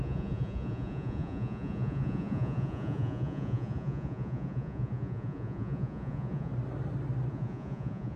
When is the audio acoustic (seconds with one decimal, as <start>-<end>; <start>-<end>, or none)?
6.5-7.3